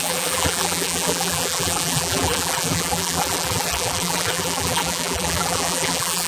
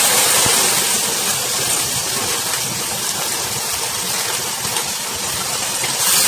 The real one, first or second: second